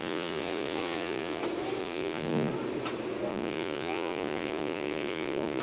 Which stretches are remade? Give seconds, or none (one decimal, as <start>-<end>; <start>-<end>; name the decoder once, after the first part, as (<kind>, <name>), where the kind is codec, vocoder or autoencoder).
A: 0.0-1.4 (vocoder, Vocos); 1.8-2.5; 3.3-5.6